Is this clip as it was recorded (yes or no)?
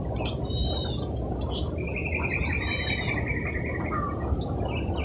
yes